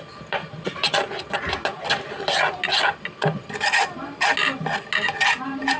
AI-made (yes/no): no